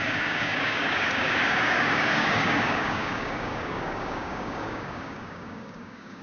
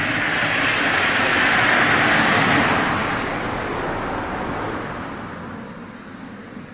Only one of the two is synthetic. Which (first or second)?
first